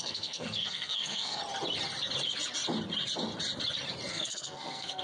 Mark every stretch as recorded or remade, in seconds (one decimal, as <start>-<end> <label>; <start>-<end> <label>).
0.0-1.4 remade; 1.4-4.1 recorded; 4.1-5.0 remade